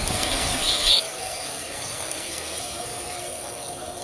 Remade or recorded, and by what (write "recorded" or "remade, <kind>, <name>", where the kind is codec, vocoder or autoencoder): remade, codec, SNAC